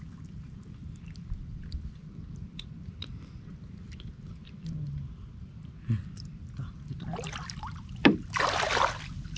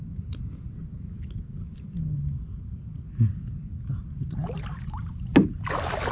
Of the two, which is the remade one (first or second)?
first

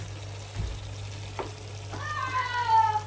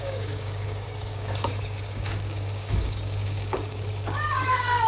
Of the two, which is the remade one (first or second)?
second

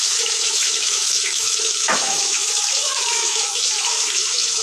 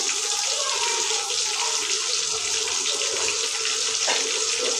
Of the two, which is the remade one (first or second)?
first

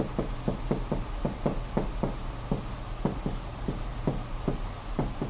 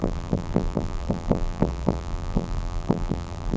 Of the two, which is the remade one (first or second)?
second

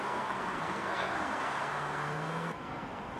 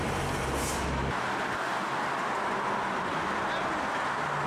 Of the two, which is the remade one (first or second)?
first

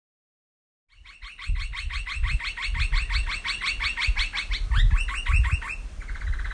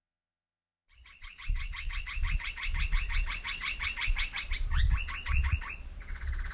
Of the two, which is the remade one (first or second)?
second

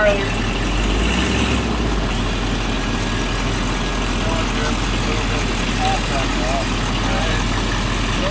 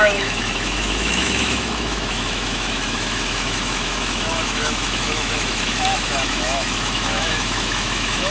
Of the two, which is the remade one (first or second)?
second